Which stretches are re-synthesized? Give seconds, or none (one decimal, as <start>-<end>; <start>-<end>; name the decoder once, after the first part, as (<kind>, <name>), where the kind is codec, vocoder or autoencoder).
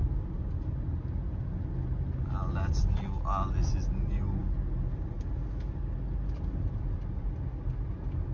none